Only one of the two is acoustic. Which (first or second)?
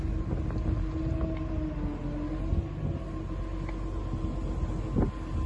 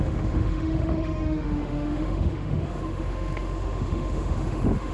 first